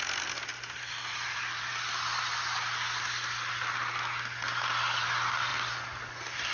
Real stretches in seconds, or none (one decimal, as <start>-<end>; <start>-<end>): 0.0-6.5